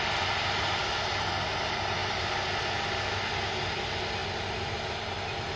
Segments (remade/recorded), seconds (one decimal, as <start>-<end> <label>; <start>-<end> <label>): 0.0-2.0 recorded; 2.0-3.1 remade; 3.1-5.6 recorded